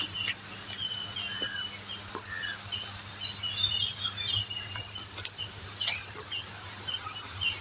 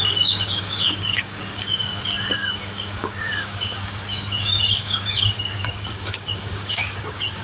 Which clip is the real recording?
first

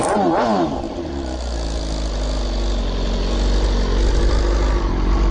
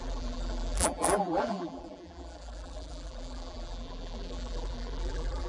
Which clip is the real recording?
first